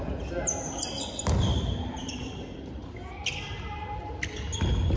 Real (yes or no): yes